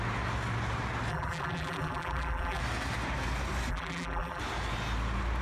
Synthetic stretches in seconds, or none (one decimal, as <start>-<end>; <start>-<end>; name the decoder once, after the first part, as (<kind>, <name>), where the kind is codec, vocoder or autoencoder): 1.1-2.6 (vocoder, BigVGAN v2); 3.7-4.4